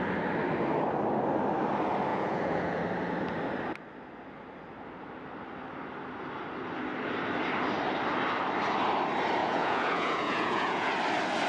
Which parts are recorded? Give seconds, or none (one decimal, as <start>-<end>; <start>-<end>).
0.0-2.1; 2.8-9.4; 10.9-11.5